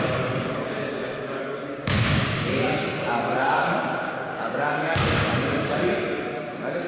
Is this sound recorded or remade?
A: remade